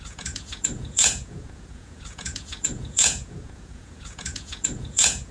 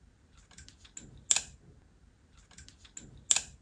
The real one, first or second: second